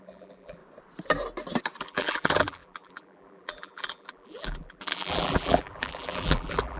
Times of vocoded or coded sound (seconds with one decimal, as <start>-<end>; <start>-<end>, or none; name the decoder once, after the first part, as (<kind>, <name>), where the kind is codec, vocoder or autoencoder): 0.0-0.6 (vocoder, BigVGAN v2); 1.8-6.8